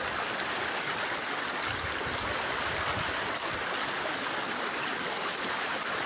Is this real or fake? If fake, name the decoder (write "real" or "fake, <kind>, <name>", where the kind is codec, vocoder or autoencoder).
real